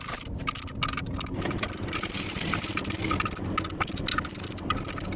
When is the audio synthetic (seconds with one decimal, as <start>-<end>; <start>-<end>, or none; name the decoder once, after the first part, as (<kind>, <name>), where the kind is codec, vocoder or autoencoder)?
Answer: 0.0-2.8 (vocoder, BigVGAN v2); 3.7-5.2